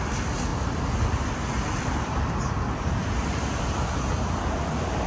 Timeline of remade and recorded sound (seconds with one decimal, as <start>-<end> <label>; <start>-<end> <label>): 0.0-0.5 recorded; 0.5-3.6 remade; 3.6-5.1 recorded